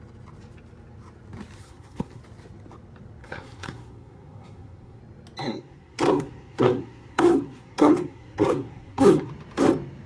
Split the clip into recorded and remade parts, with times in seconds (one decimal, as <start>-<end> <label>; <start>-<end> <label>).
0.0-1.6 recorded; 1.6-2.2 remade; 2.2-3.2 recorded; 3.2-5.0 remade; 5.0-5.4 recorded; 5.4-9.3 remade; 9.3-10.1 recorded